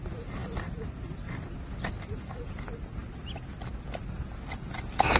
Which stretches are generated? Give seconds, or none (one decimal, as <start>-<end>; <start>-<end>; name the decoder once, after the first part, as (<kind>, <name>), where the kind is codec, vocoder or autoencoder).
none